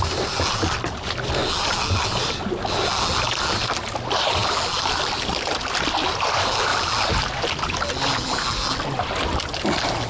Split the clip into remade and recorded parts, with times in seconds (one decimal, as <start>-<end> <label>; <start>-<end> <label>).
0.0-10.1 recorded